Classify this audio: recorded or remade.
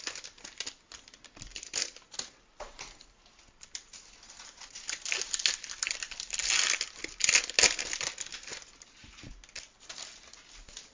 recorded